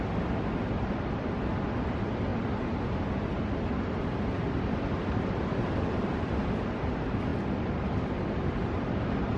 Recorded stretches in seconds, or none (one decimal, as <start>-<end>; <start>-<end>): 0.0-9.4

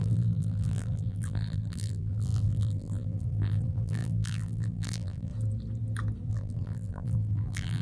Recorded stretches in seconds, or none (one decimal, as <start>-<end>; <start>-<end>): 5.3-6.3

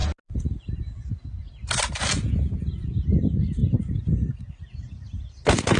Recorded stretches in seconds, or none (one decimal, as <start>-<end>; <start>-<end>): 0.0-3.6; 4.4-5.8

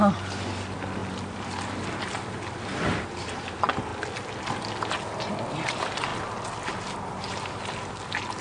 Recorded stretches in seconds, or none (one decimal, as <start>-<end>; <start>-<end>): 3.9-4.8; 6.1-6.7

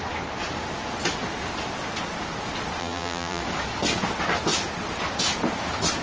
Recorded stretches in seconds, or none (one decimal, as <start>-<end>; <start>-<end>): 0.0-2.8; 3.4-6.0